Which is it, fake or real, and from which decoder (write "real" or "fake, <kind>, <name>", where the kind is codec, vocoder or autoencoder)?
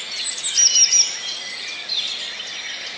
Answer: real